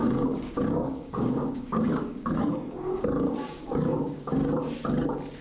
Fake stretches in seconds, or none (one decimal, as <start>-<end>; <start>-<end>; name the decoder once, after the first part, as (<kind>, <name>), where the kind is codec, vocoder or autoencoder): 0.0-4.4 (codec, DAC)